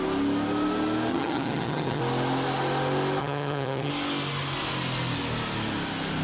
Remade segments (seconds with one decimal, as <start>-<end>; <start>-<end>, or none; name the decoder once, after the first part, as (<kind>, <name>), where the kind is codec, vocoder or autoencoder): 1.1-2.0 (vocoder, HiFi-GAN); 3.2-3.9

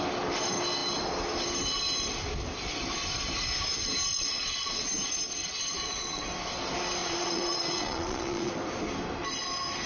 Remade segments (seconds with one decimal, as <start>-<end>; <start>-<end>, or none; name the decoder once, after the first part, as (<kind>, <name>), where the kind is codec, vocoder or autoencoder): 4.1-4.8 (vocoder, Vocos); 5.4-6.2; 7.0-8.5

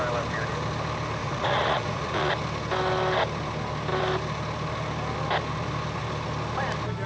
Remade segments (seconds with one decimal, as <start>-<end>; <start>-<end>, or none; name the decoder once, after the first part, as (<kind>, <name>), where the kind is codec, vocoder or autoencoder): 1.2-2.3 (vocoder, Vocos)

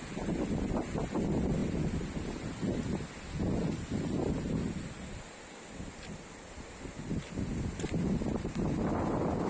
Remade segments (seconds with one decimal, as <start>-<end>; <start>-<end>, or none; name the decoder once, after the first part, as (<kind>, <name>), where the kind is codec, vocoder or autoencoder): none

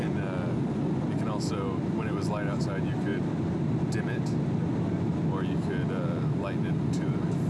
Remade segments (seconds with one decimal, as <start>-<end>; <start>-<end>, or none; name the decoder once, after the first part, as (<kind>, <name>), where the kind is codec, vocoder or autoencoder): none

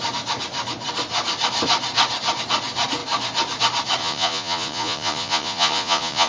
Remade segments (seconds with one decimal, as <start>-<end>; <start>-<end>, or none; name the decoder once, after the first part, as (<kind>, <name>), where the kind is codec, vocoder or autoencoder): 4.0-6.3 (vocoder, Vocos)

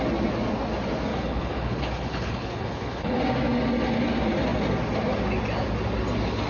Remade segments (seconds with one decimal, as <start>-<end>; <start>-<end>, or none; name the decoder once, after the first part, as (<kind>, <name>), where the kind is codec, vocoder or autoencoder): 1.1-3.2 (codec, HILCodec)